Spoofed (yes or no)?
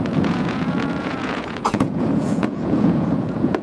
yes